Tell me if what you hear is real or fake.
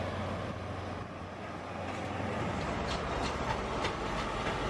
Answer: real